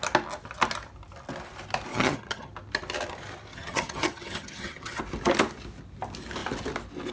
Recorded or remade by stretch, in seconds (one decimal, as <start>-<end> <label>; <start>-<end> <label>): 0.0-1.9 recorded; 1.9-2.5 remade; 2.5-3.5 recorded; 3.5-5.0 remade; 5.0-7.1 recorded